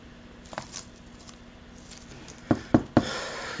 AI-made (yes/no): no